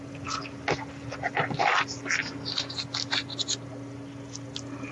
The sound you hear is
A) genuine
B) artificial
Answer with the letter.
A